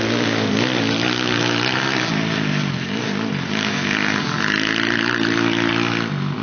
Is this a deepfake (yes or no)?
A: no